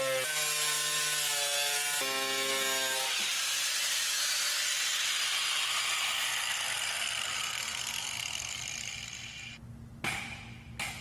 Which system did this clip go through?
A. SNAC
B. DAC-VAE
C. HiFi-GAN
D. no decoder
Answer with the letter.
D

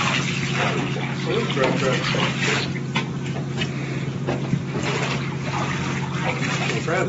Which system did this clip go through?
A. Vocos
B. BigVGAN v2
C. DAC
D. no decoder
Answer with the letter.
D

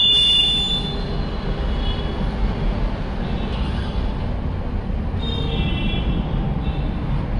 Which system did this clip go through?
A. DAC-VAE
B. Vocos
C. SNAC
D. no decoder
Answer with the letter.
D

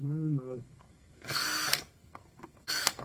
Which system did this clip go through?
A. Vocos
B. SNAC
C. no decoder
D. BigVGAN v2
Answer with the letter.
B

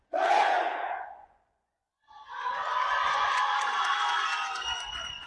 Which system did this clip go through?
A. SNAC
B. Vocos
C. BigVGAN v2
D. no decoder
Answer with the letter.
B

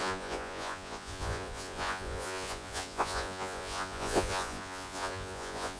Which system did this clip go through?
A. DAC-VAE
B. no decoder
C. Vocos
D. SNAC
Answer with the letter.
C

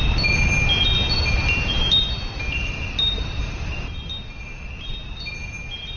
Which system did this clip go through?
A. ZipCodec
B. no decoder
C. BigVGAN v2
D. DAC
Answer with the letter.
B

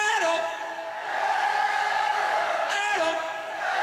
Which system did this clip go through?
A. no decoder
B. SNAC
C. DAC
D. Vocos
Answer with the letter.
C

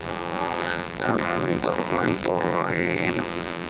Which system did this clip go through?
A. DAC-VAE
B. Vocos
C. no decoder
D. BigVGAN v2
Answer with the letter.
D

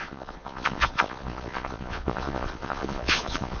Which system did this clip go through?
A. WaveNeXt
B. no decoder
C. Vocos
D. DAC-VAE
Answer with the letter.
C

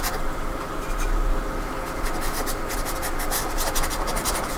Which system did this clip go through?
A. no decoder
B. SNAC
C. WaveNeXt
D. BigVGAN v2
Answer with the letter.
A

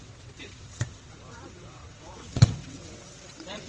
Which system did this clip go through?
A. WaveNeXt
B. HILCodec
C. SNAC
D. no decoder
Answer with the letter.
A